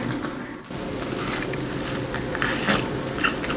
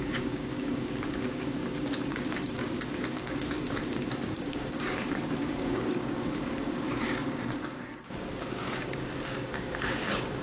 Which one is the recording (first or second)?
first